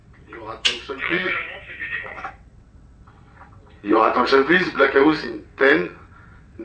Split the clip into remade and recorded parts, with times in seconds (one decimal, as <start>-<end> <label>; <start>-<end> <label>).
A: 0.0-6.6 remade